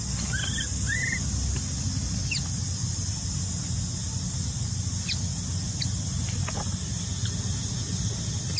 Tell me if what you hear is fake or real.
real